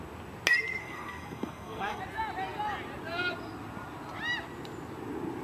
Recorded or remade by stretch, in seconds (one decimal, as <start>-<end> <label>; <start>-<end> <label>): 0.0-0.8 recorded; 0.8-2.0 remade; 2.0-5.4 recorded